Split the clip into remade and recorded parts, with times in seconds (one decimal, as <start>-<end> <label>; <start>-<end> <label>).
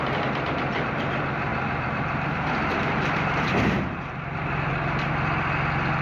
0.0-1.5 recorded; 1.5-5.1 remade; 5.1-6.0 recorded